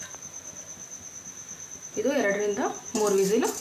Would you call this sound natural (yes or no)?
yes